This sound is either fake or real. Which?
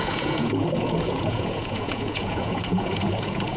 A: fake